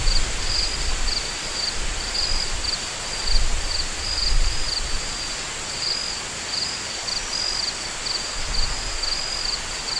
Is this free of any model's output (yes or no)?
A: yes